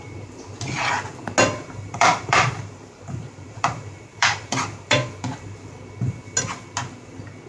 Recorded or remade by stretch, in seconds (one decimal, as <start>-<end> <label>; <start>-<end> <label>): 0.0-1.6 recorded; 1.6-5.8 remade; 5.8-7.5 recorded